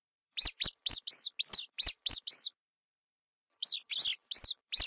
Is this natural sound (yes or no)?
yes